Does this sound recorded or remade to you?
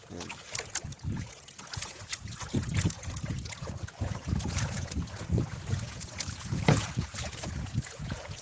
remade